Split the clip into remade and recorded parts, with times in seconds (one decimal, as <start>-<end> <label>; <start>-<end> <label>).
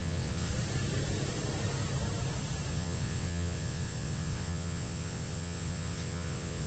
0.0-0.5 remade; 0.5-2.7 recorded; 2.7-6.7 remade